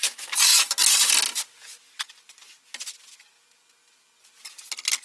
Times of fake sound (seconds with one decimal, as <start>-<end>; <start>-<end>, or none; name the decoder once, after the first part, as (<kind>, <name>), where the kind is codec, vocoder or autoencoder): none